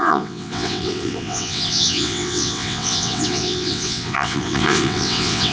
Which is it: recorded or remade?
remade